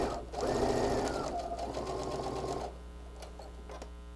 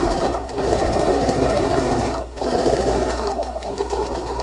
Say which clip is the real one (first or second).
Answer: first